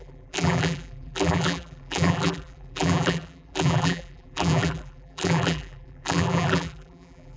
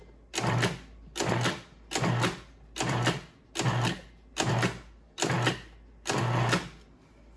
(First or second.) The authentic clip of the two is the second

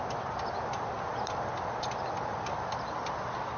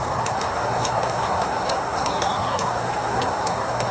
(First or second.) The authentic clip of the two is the first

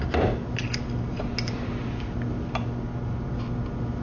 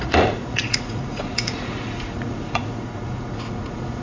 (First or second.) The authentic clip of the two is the first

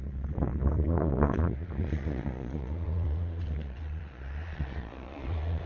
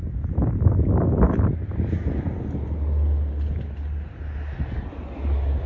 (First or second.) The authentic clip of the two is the second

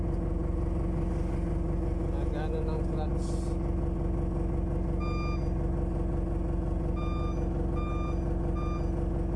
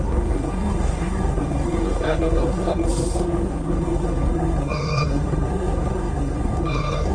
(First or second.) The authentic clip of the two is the first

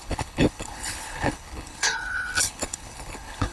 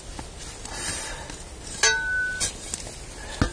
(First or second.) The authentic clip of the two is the second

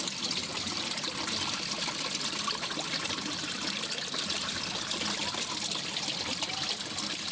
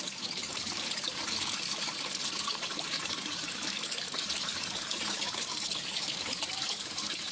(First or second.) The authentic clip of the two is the first